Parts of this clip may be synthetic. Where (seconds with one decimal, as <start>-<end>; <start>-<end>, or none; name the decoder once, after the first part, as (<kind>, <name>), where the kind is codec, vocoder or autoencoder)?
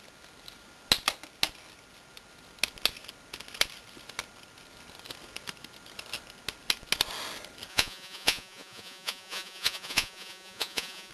7.7-11.1 (vocoder, Vocos)